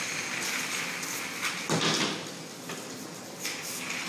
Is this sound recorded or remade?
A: recorded